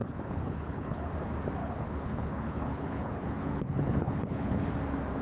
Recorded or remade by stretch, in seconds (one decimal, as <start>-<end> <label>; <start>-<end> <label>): 0.0-1.1 remade; 1.1-1.6 recorded; 1.6-4.7 remade; 4.7-5.2 recorded